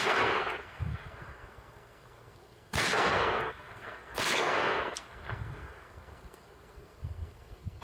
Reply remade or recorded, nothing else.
remade